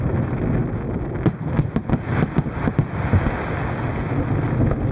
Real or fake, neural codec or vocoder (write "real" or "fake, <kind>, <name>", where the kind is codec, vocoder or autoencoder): real